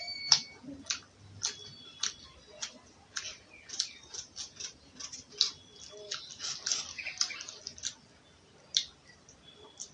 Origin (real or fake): real